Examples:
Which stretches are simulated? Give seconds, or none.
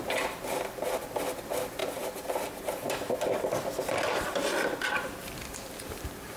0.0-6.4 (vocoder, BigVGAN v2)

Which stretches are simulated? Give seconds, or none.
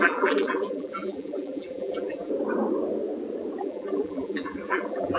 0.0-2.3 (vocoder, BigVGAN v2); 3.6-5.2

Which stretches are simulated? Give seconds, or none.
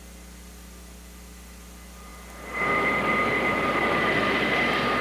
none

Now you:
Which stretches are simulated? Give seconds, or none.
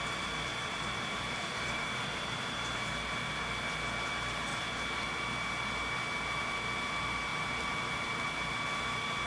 0.5-2.5 (vocoder, BigVGAN v2); 7.3-8.1